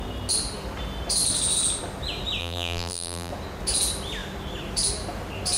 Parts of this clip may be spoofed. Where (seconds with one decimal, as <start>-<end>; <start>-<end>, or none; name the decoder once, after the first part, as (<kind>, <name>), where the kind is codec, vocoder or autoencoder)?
2.4-3.3 (vocoder, BigVGAN v2)